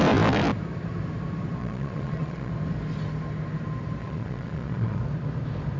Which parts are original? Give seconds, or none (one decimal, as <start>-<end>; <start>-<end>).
0.0-1.6; 2.5-4.0; 5.0-5.8